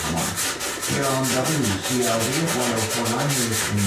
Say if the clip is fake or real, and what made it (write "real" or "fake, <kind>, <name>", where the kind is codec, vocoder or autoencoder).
real